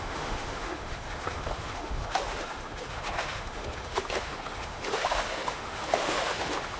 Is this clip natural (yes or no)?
no